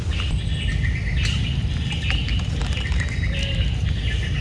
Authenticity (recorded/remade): recorded